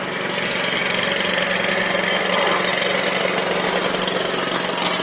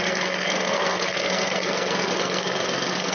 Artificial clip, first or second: second